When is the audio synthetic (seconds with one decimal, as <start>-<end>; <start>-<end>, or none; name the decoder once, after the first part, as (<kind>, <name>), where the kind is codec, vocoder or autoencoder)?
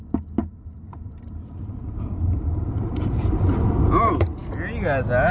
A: 0.4-3.6 (vocoder, BigVGAN v2)